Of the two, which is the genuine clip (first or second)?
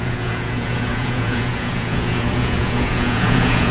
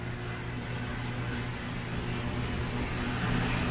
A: second